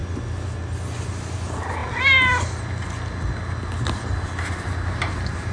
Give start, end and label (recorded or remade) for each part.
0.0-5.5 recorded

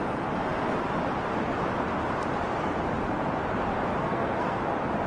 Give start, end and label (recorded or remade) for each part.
0.0-4.0 recorded; 4.0-4.6 remade; 4.6-5.1 recorded

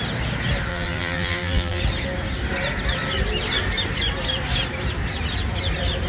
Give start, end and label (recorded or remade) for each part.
0.0-0.7 recorded; 0.7-1.8 remade; 1.8-6.1 recorded

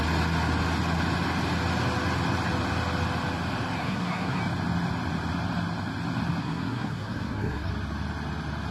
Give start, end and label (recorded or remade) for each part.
0.0-3.8 recorded; 3.8-4.4 remade; 4.4-6.4 recorded; 6.4-7.7 remade; 7.7-8.7 recorded

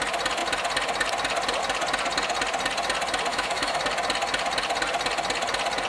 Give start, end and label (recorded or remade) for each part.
0.0-3.3 recorded; 3.3-3.8 remade; 3.8-5.9 recorded